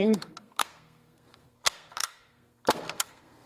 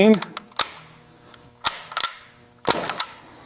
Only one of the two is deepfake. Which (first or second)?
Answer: first